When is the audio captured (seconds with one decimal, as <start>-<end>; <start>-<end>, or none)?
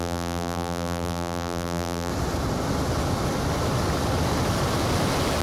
2.1-5.4